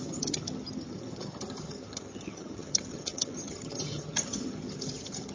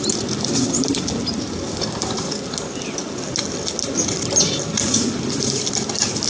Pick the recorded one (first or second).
second